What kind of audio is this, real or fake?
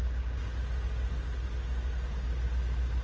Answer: real